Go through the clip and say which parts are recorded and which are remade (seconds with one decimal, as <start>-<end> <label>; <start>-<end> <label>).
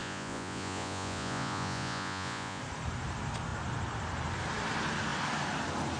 0.0-2.6 remade; 2.6-6.0 recorded